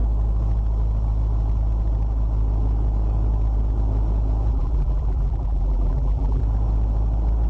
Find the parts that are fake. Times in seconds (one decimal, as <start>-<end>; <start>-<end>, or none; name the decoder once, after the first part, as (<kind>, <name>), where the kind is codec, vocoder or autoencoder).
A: 4.5-6.4 (vocoder, BigVGAN v2)